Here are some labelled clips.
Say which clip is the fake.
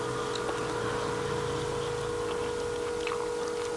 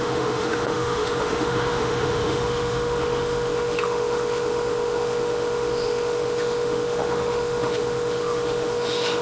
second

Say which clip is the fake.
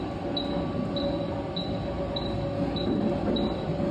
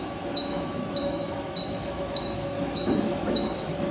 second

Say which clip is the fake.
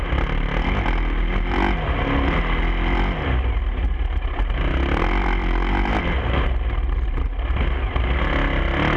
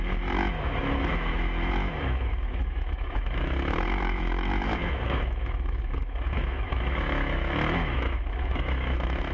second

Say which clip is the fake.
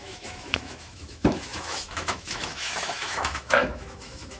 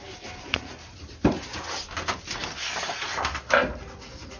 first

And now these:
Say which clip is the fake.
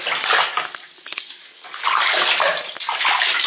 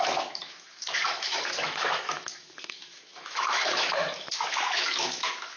second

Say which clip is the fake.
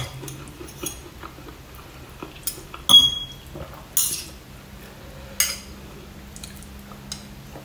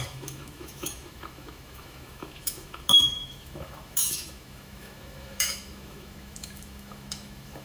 second